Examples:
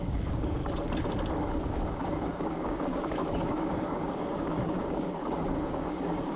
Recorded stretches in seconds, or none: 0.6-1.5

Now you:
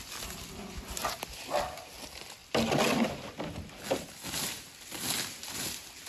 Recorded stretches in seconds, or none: 0.0-1.0; 1.8-6.1

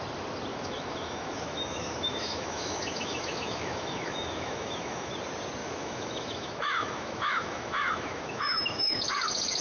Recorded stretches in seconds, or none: 0.0-0.5; 5.1-5.6

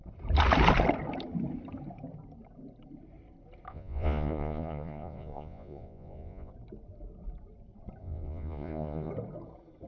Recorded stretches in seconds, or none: 0.0-3.7; 6.5-8.0; 9.1-9.9

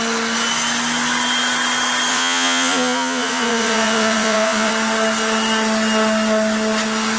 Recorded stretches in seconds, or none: 0.0-2.1; 4.7-7.2